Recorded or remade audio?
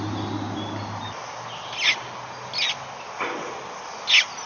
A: recorded